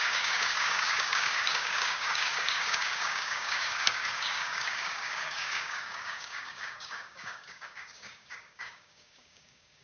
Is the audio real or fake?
fake